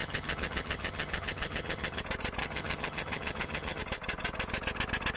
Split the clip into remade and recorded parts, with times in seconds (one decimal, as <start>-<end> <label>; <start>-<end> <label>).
0.0-2.0 remade; 2.0-2.4 recorded; 2.4-3.8 remade; 3.8-5.2 recorded